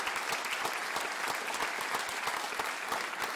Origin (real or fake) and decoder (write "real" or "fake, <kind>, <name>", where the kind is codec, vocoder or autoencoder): real